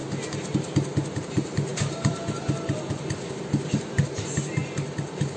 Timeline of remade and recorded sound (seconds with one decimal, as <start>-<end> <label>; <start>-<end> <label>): 0.0-1.2 recorded; 1.2-4.6 remade; 4.6-5.4 recorded